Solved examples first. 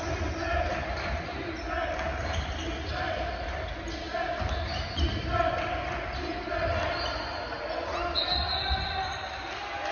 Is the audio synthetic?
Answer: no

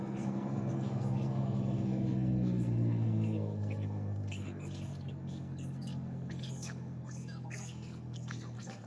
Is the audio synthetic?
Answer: yes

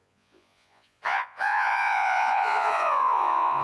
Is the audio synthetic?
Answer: yes